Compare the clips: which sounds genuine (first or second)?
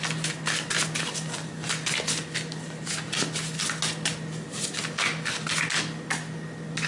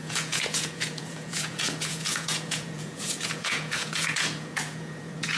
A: first